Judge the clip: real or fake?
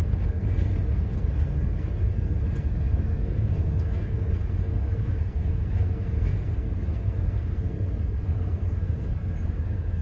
fake